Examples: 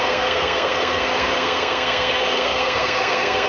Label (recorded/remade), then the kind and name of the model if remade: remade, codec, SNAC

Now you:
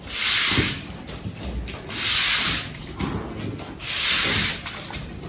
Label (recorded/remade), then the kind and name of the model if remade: recorded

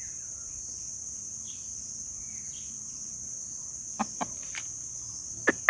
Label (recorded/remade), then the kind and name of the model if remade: recorded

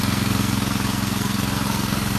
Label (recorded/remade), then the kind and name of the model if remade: remade, codec, SNAC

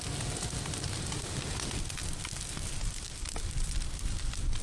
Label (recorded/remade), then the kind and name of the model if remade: recorded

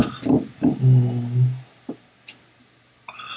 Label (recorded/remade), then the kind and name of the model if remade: recorded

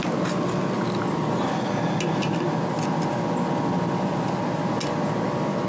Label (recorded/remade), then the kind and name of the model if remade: recorded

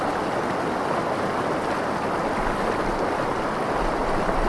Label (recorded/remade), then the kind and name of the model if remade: recorded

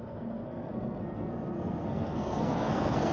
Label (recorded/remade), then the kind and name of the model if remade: remade, codec, SNAC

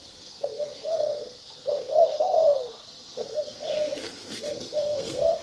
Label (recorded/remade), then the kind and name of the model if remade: remade, codec, SNAC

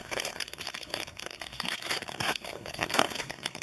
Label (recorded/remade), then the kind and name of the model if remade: remade, codec, SNAC